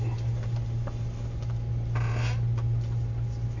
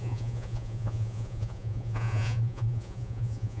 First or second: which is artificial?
second